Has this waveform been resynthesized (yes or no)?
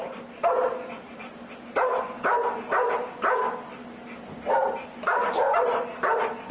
no